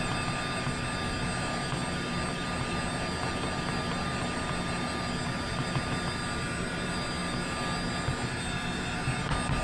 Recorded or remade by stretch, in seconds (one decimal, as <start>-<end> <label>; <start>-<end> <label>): 0.0-9.6 recorded